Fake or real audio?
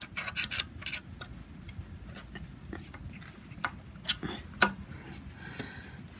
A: real